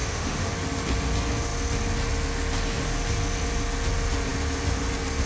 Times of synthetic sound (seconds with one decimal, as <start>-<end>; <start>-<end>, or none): 0.0-0.5